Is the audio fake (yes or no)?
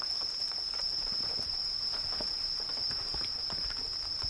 yes